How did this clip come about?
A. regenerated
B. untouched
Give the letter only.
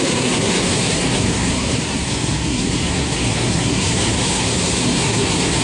A